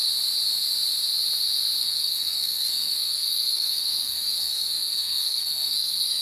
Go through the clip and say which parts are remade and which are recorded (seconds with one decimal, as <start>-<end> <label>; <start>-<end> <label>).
0.0-1.8 recorded; 1.8-6.2 remade